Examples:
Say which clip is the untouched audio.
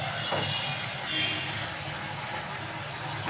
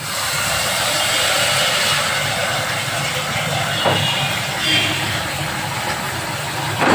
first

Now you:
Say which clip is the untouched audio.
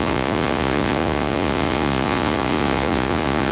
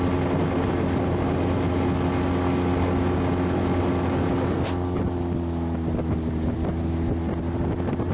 second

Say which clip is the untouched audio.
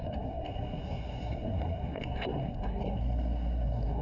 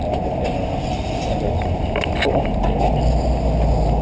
second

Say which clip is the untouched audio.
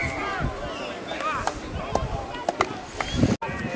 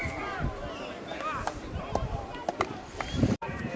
first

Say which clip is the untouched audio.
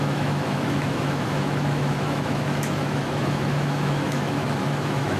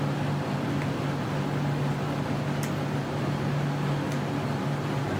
second